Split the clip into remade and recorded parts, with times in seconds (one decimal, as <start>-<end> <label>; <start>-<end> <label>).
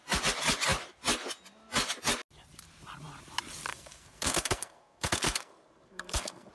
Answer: 0.0-3.7 recorded; 3.7-6.5 remade